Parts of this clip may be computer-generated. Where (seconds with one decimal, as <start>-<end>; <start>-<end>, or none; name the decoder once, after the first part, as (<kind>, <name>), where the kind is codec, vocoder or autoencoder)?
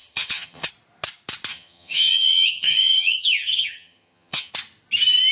0.0-0.7 (vocoder, HiFi-GAN); 1.5-4.5